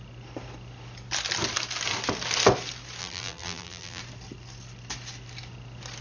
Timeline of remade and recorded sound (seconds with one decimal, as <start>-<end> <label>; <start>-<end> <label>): 0.0-3.0 recorded; 3.0-4.0 remade; 4.0-6.0 recorded